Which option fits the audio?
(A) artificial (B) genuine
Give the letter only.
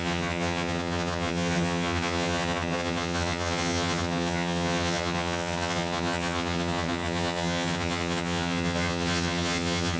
A